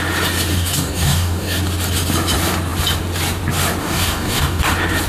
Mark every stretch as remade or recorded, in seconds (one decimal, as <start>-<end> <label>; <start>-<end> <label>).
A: 0.0-0.5 recorded; 0.5-1.6 remade; 1.6-3.8 recorded; 3.8-4.6 remade; 4.6-5.1 recorded